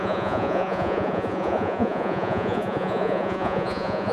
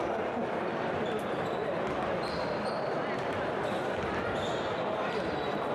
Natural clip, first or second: second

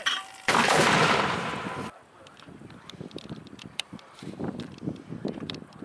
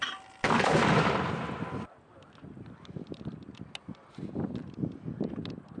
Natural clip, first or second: second